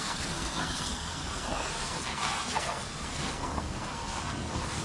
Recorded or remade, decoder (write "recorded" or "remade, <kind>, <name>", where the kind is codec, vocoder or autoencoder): remade, codec, SNAC